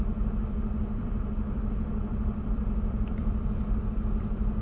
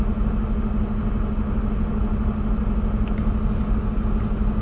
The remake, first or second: first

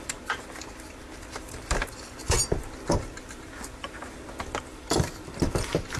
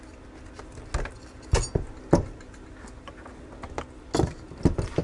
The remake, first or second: first